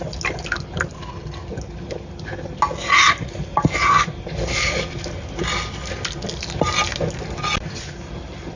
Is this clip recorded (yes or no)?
yes